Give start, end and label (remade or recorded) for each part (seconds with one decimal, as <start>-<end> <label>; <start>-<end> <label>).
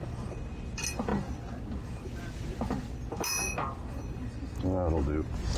0.0-5.6 recorded